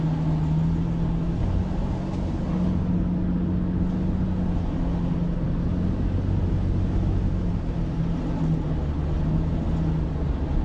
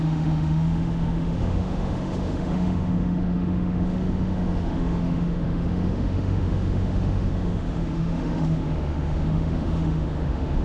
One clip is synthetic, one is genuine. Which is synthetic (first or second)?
second